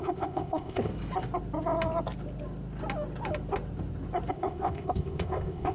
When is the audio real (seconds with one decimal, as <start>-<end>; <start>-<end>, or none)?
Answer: 0.9-4.3